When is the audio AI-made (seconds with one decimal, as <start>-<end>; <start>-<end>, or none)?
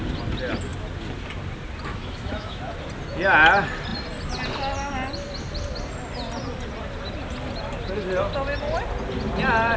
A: 1.9-2.6